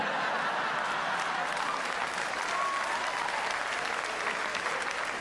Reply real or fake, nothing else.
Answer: real